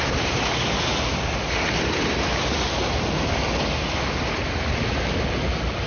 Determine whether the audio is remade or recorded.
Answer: recorded